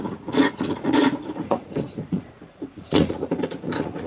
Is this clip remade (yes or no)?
yes